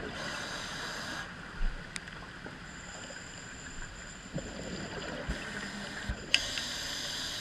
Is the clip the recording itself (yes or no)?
yes